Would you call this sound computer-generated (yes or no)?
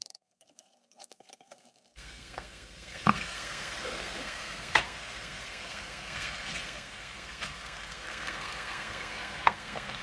yes